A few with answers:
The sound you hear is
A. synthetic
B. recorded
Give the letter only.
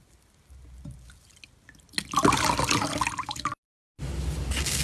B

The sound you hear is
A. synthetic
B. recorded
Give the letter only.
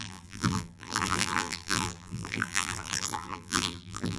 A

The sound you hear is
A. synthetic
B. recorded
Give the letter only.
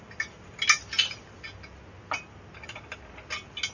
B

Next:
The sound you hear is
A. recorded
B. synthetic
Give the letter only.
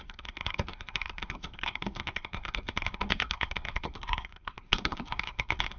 B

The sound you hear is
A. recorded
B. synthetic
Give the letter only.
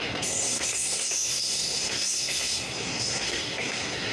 B